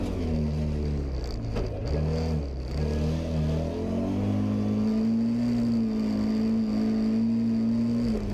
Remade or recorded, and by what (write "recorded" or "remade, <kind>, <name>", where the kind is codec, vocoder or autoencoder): recorded